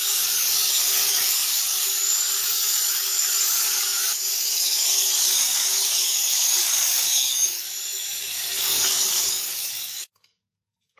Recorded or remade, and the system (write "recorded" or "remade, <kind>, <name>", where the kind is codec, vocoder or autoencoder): remade, codec, DAC